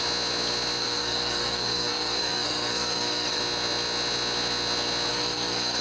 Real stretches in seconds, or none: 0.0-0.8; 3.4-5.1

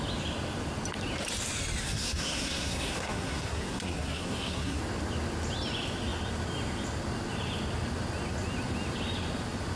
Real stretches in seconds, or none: 0.0-1.8; 4.8-9.8